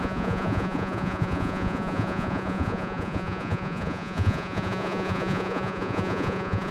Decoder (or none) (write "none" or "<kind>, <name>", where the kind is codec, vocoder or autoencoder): vocoder, Vocos